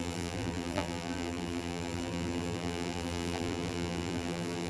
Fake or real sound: fake